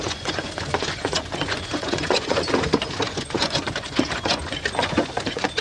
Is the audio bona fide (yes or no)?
no